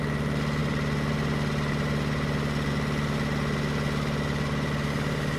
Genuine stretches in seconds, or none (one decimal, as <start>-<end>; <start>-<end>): 0.0-5.4